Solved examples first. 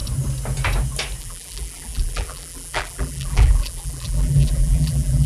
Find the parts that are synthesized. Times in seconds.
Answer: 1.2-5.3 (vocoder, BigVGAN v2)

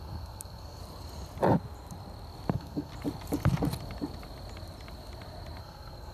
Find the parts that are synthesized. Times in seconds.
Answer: 0.0-0.8 (codec, SNAC); 2.5-2.9; 5.6-6.1

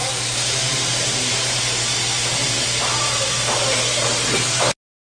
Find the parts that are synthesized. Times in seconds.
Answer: 0.0-1.6 (vocoder, BigVGAN v2); 2.4-3.5

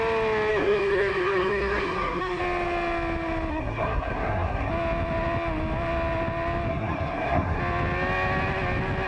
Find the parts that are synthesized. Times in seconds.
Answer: 0.5-2.4 (codec, SNAC); 3.5-4.7; 6.7-7.6

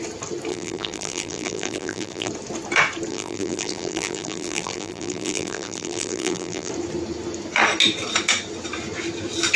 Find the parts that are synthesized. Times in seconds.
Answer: 0.5-2.3 (vocoder, BigVGAN v2); 3.1-6.7

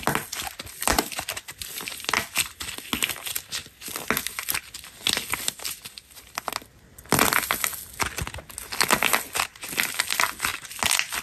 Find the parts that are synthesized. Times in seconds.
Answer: none

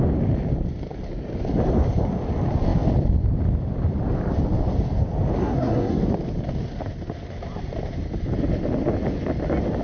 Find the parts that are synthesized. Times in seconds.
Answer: 5.4-6.0 (codec, SNAC)

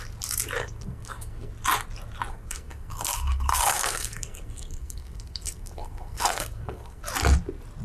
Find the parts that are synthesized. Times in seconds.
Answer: 0.6-1.5 (codec, SNAC); 2.3-7.0